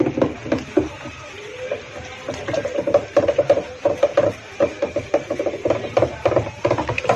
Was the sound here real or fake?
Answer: real